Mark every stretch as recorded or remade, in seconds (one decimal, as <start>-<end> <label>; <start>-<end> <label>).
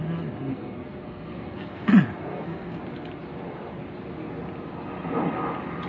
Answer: 0.0-0.5 recorded; 0.5-1.9 remade; 1.9-2.3 recorded; 2.3-2.8 remade; 2.8-5.9 recorded